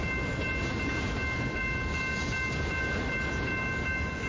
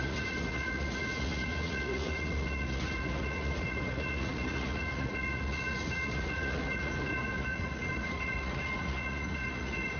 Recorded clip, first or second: first